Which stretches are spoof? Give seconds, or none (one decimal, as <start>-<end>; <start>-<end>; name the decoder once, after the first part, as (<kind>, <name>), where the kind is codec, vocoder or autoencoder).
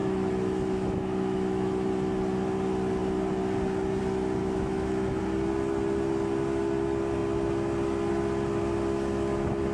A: 0.0-1.9 (autoencoder, DAC-VAE); 4.4-5.2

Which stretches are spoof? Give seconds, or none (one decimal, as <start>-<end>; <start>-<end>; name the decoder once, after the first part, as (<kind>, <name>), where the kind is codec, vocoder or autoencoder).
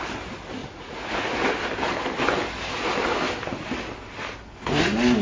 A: 0.6-1.5 (vocoder, Vocos)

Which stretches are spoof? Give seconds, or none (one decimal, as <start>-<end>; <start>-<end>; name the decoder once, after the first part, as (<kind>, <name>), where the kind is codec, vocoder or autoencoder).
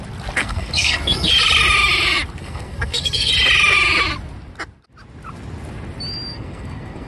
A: 0.4-1.3 (codec, SNAC); 2.4-3.3; 6.3-7.1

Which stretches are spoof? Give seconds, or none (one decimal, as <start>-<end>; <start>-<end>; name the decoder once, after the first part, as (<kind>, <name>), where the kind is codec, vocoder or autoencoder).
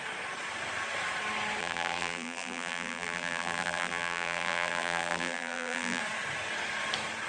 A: 1.6-6.0 (vocoder, BigVGAN v2)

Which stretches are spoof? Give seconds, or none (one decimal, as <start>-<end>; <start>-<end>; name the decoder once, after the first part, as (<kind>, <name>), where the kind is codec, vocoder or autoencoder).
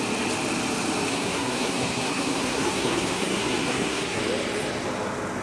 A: 1.1-4.2 (codec, SNAC)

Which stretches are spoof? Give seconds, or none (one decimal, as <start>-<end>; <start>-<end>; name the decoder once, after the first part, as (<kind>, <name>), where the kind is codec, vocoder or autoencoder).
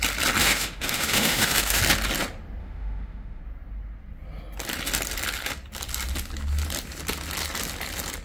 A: 0.4-1.8 (autoencoder, DAC-VAE); 2.6-3.4